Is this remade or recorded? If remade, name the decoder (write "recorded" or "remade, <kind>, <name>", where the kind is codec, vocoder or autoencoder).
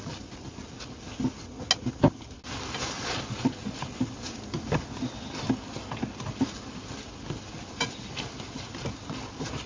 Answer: recorded